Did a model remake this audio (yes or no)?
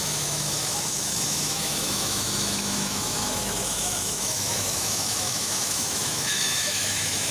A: yes